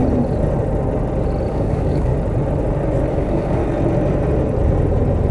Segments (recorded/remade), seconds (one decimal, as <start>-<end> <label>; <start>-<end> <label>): 0.0-1.5 recorded; 1.5-2.1 remade; 2.1-3.1 recorded; 3.1-3.6 remade; 3.6-5.3 recorded